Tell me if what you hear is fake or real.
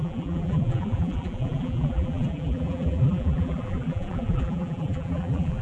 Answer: fake